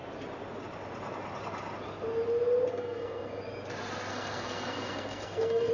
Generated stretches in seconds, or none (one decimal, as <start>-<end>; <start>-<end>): 2.7-3.4; 4.1-5.7